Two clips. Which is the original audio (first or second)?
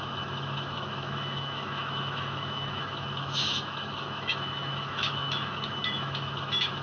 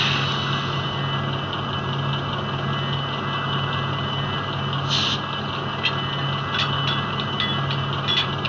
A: second